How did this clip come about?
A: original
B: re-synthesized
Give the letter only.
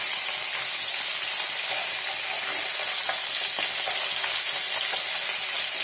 A